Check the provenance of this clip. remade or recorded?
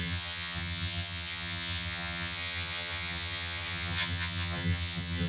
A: remade